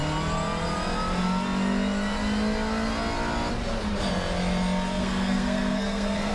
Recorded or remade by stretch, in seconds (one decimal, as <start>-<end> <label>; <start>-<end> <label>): 0.0-5.0 recorded; 5.0-6.3 remade